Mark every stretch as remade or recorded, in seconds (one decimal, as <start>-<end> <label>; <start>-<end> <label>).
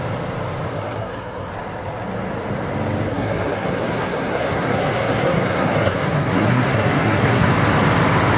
0.0-0.7 recorded; 0.7-1.5 remade; 1.5-3.1 recorded; 3.1-7.5 remade; 7.5-8.4 recorded